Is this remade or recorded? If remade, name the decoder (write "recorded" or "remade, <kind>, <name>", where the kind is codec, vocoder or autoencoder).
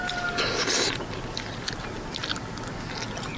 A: recorded